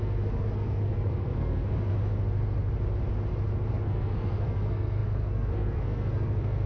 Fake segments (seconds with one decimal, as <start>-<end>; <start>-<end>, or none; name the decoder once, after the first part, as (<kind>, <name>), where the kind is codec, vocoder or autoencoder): 0.0-1.9 (codec, SNAC); 3.7-6.7